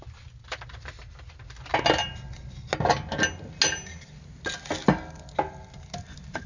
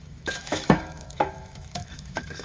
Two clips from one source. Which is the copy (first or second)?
second